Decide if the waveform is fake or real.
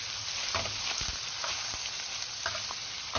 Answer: real